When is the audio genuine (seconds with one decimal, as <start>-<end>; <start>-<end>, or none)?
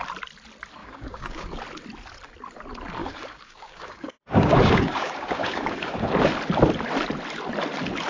0.0-0.8; 1.6-3.0; 6.1-8.1